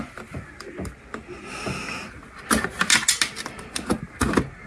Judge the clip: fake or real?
real